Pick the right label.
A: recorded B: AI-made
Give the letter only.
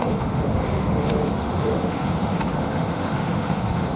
B